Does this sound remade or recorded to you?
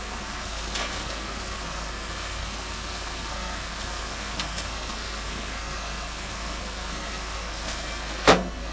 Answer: remade